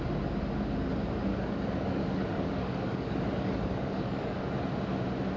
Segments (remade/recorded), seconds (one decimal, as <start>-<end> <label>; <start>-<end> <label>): 0.0-1.3 recorded; 1.3-4.5 remade; 4.5-5.4 recorded